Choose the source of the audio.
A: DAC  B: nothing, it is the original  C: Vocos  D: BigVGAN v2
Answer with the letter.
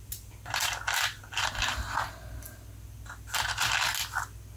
B